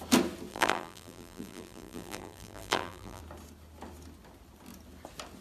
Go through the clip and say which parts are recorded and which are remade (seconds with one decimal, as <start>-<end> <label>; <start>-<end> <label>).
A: 0.0-0.5 recorded; 0.5-3.2 remade; 3.2-5.4 recorded